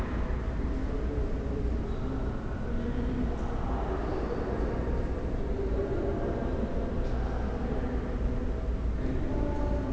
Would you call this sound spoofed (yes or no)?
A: no